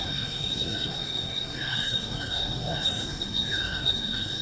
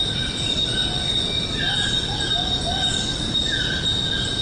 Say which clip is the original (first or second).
second